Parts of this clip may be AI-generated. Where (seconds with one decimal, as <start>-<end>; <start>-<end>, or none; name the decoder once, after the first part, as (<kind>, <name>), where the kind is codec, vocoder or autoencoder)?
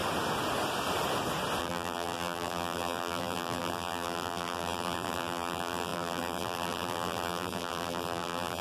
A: 1.6-8.6 (vocoder, BigVGAN v2)